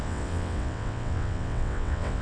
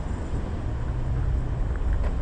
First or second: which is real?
second